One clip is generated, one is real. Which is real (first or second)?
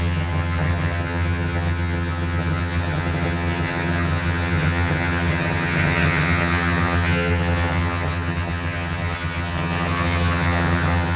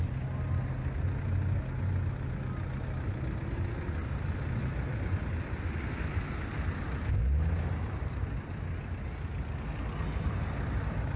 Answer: second